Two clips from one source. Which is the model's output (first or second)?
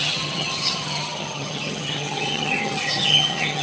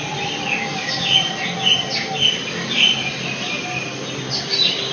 first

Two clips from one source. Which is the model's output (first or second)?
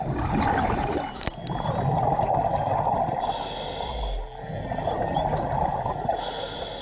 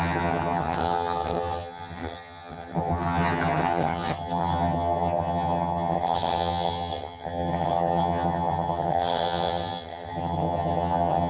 second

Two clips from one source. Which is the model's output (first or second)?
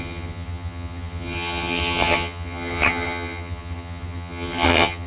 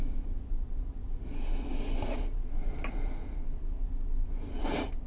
first